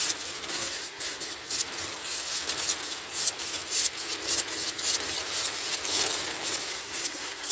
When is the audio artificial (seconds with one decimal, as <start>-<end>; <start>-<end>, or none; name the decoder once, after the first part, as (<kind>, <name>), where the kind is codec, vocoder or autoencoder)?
0.5-1.2 (codec, SNAC); 6.7-7.5